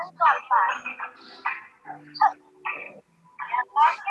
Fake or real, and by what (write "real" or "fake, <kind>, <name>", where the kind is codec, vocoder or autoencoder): real